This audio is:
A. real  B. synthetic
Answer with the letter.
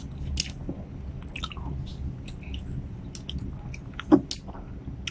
A